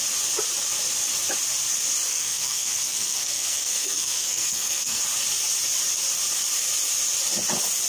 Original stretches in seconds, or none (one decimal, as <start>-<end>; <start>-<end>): 0.0-2.1; 5.0-7.9